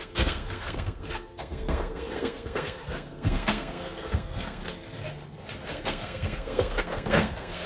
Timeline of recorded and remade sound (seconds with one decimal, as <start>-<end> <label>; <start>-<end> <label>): 0.0-4.6 remade; 4.6-5.7 recorded; 5.7-7.7 remade